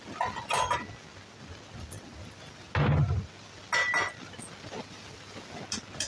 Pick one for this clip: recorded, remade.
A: recorded